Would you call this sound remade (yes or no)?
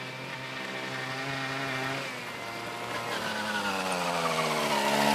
no